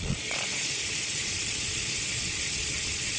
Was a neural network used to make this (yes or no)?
yes